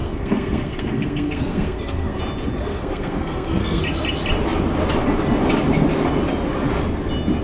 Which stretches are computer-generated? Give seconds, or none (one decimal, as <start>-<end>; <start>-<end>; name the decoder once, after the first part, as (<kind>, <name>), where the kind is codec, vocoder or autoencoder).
0.0-2.2 (codec, SNAC); 2.6-3.8